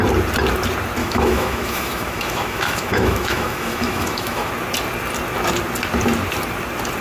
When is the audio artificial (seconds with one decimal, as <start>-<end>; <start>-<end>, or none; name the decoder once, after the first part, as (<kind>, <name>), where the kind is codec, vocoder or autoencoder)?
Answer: 1.0-4.5 (autoencoder, DAC-VAE)